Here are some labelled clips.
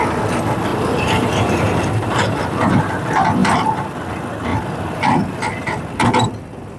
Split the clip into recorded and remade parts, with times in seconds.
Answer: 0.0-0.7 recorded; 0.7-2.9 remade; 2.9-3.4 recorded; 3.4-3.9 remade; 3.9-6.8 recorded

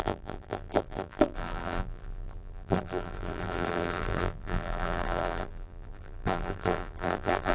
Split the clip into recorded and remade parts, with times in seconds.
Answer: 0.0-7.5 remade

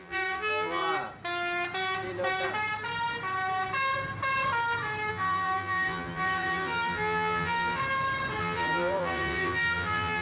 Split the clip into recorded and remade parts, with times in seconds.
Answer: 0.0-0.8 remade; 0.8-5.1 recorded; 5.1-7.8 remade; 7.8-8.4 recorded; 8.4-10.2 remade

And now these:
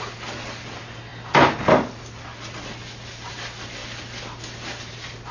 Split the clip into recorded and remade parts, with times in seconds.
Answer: 0.0-1.1 recorded; 1.1-3.3 remade; 3.3-3.8 recorded; 3.8-5.3 remade